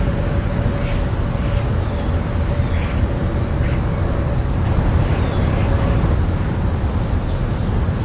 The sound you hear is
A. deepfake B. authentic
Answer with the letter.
B